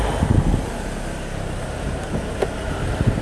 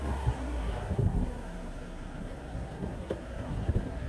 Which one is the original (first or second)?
first